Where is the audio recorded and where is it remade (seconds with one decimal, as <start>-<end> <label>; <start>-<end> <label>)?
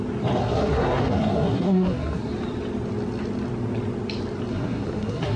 0.0-0.4 recorded; 0.4-2.3 remade; 2.3-4.5 recorded; 4.5-5.4 remade